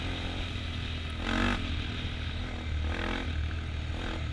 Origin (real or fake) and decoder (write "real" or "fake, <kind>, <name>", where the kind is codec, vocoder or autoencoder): real